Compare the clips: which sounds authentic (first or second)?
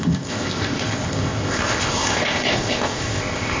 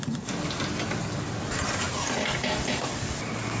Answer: second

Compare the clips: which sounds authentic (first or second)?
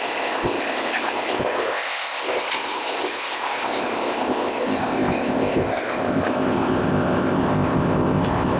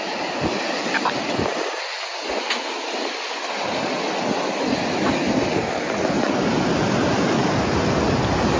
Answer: second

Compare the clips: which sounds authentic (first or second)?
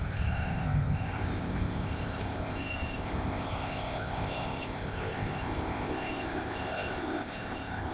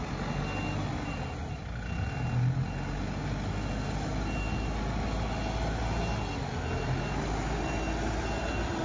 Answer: second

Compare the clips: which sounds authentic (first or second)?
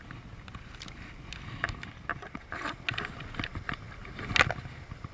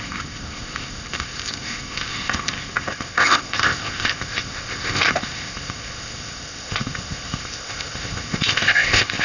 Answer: first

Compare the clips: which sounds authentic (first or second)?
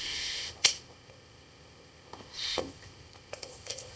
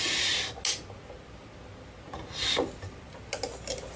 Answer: second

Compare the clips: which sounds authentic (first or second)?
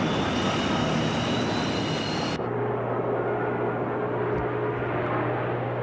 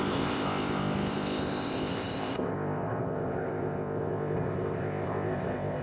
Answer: first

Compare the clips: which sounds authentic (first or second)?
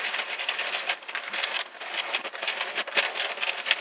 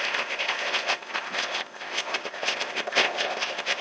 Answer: first